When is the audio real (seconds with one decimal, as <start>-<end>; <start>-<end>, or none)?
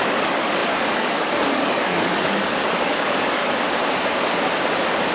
3.4-5.1